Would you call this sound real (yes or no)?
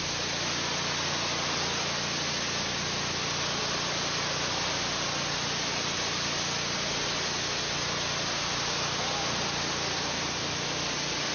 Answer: yes